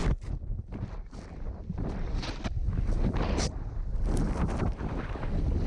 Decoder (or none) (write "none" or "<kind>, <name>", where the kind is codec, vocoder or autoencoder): none